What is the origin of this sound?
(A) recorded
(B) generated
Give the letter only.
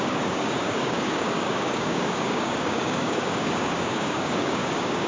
B